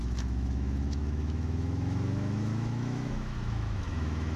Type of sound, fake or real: fake